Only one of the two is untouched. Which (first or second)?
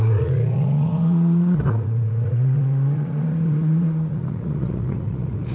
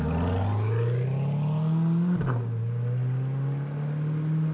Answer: second